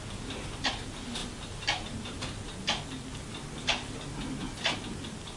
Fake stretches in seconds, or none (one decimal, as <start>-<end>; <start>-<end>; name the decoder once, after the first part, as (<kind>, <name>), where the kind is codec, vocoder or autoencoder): none